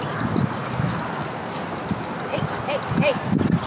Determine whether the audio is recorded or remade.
recorded